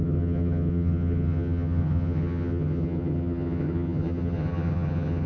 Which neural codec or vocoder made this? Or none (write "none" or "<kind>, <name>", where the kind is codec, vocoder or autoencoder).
vocoder, HiFi-GAN